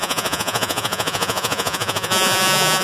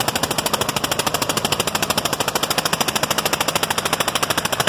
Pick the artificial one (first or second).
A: first